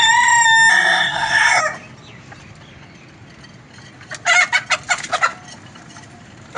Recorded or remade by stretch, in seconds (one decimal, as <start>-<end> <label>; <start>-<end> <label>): 0.0-0.7 recorded; 0.7-1.6 remade; 1.6-6.6 recorded